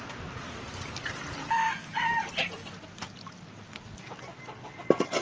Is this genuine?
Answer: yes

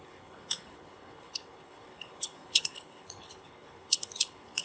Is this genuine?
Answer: no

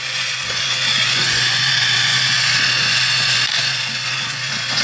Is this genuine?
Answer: no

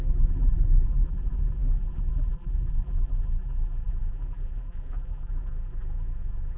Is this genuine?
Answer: no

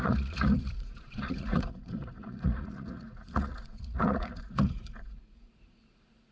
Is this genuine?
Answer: no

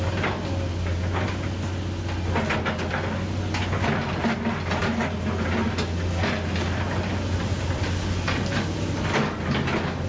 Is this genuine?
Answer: yes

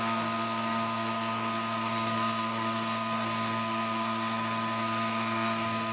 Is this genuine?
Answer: no